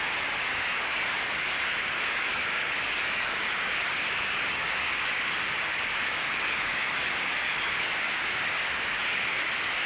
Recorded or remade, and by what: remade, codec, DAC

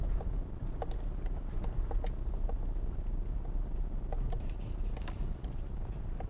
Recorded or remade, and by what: recorded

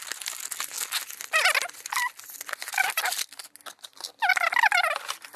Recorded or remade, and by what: recorded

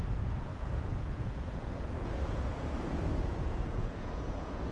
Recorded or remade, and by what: remade, vocoder, Vocos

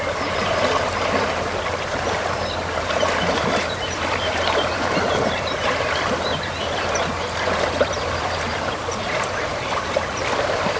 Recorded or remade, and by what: remade, vocoder, BigVGAN v2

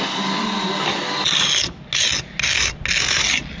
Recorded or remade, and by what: recorded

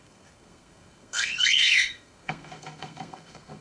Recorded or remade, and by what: remade, codec, SNAC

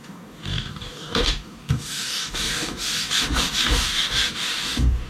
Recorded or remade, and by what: remade, codec, DAC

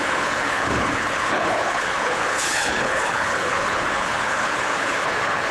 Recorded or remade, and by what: remade, codec, HILCodec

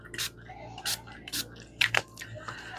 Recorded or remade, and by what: recorded